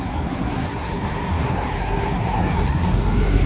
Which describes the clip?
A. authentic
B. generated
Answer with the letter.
B